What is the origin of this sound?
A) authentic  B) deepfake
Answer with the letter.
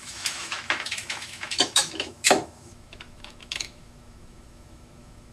B